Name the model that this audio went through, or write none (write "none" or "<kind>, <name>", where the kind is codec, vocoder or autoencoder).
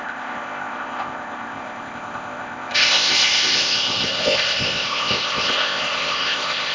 codec, ZipCodec